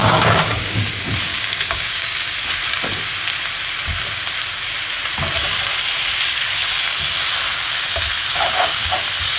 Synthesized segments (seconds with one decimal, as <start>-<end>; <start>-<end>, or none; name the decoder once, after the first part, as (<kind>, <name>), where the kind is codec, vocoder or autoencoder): 0.0-0.8 (codec, DAC); 1.3-2.3; 8.3-9.0